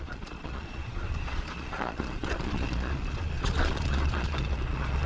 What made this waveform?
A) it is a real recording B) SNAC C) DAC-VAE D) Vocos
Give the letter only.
D